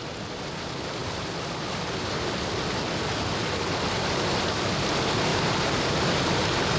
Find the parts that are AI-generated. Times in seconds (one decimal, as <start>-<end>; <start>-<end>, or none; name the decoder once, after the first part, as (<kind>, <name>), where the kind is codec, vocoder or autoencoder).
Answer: 5.3-5.9 (vocoder, BigVGAN v2)